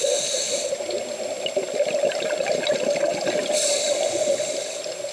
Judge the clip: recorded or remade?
recorded